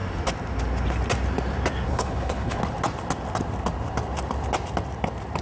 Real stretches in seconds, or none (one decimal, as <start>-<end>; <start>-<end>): 0.0-1.9; 2.6-5.4